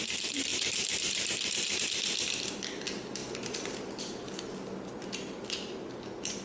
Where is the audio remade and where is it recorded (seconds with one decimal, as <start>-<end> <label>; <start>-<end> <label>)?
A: 0.0-0.5 recorded; 0.5-1.8 remade; 1.8-6.4 recorded